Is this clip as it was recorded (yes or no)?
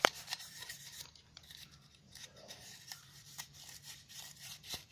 no